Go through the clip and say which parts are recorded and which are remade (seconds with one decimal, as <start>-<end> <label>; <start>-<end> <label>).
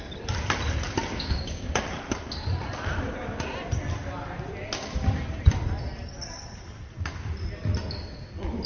0.0-1.1 recorded; 1.1-1.7 remade; 1.7-8.7 recorded